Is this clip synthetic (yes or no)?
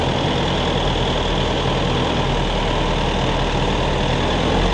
no